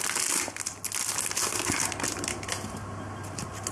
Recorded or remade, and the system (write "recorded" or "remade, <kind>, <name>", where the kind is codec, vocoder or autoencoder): recorded